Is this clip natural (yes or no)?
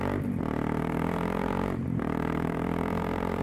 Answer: no